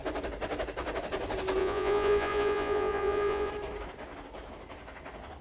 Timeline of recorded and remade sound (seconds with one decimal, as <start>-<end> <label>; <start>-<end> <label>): 0.0-1.6 recorded; 1.6-3.5 remade; 3.5-5.4 recorded